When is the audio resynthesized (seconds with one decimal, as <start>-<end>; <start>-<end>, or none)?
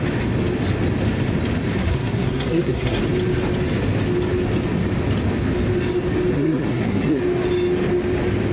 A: 1.8-3.0; 6.3-7.2